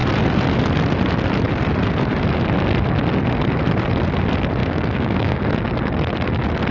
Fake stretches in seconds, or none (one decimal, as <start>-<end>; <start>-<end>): 4.6-5.4